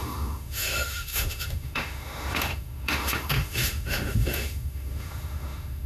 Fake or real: fake